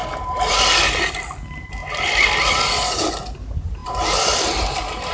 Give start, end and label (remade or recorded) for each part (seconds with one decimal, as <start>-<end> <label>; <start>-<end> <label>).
0.0-3.8 recorded; 3.8-4.5 remade; 4.5-5.1 recorded